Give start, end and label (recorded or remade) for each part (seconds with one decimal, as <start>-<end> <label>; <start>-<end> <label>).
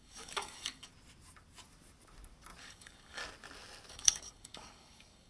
0.0-0.9 remade; 0.9-2.6 recorded; 2.6-3.2 remade; 3.2-3.9 recorded; 3.9-5.3 remade